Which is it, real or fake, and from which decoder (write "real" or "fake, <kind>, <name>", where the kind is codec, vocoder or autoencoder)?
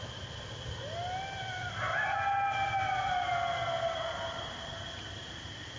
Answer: real